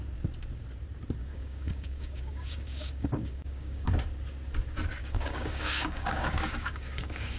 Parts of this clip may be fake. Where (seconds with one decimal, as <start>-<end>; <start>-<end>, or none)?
1.2-3.9; 5.0-7.4